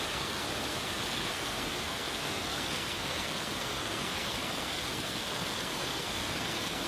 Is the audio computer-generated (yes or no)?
yes